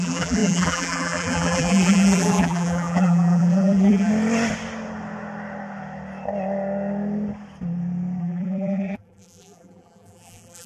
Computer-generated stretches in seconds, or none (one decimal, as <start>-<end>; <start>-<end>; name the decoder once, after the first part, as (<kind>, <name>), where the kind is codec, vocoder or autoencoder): 0.0-4.1 (vocoder, BigVGAN v2); 8.2-10.7